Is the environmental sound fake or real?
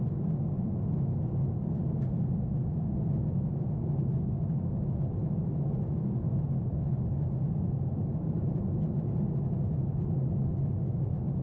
real